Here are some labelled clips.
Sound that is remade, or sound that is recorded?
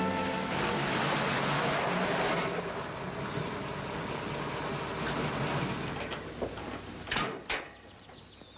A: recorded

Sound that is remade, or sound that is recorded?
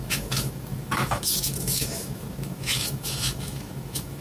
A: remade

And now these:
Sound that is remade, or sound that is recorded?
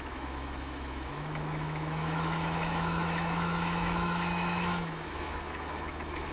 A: remade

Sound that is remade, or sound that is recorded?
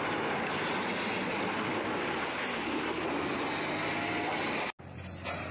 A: recorded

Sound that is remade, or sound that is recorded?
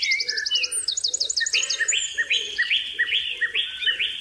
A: recorded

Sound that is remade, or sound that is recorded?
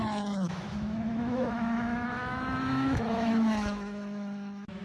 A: remade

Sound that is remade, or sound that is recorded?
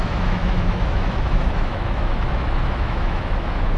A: remade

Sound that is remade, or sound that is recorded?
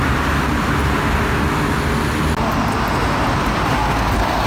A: recorded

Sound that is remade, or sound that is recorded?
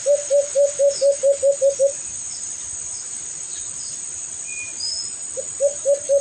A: recorded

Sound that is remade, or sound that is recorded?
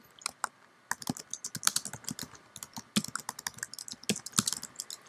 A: recorded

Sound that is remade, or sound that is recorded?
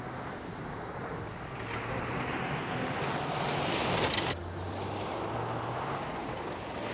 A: recorded